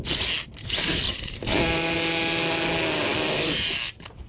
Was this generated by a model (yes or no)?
no